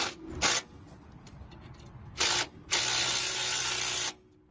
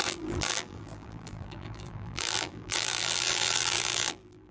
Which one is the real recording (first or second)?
first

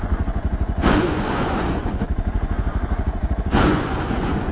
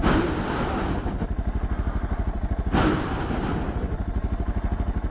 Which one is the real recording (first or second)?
second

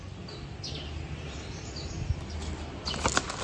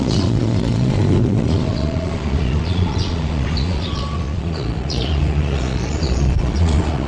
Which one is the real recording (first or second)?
first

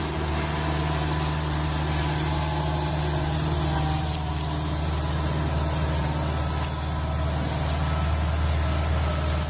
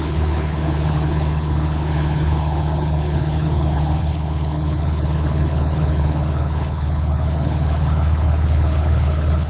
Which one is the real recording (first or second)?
first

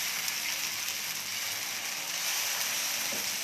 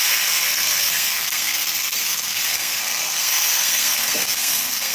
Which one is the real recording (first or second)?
first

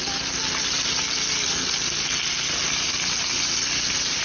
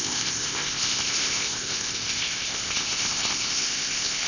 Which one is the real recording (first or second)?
first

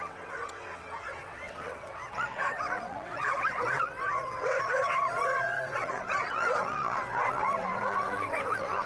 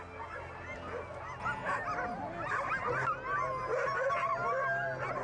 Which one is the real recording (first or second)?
second